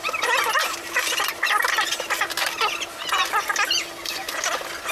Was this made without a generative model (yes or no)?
yes